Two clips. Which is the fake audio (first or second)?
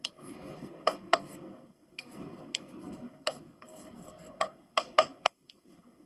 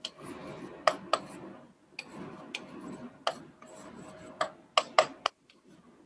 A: first